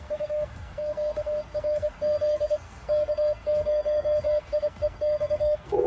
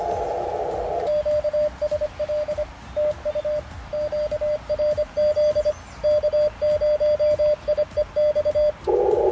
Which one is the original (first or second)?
second